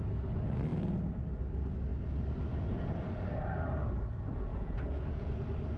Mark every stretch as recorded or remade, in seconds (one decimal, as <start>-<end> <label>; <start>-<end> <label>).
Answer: 0.0-4.5 recorded; 4.5-5.3 remade; 5.3-5.8 recorded